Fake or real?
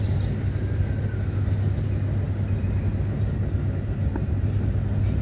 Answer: real